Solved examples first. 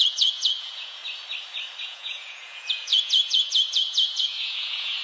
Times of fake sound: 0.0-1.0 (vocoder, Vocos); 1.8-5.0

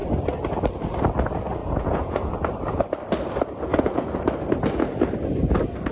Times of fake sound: 1.6-2.3 (vocoder, Vocos); 3.7-4.2

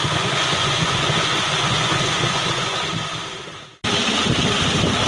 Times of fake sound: 0.0-2.9 (vocoder, Vocos)

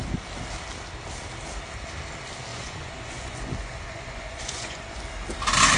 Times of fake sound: 2.5-5.0 (vocoder, Vocos)

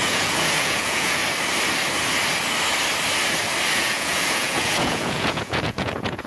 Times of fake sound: 0.0-1.2 (vocoder, Vocos); 3.7-6.3

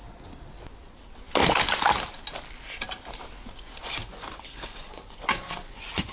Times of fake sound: 3.6-6.1 (vocoder, Vocos)

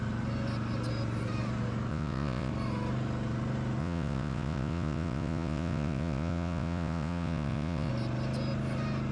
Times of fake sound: 1.9-2.5 (vocoder, Vocos); 3.8-7.9

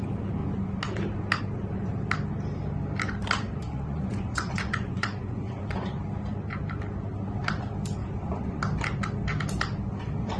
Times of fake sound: 3.6-6.0 (vocoder, Vocos); 8.0-8.6